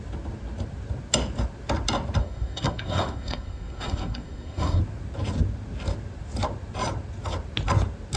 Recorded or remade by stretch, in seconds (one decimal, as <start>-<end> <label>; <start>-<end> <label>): 0.0-2.2 recorded; 2.2-4.8 remade; 4.8-8.2 recorded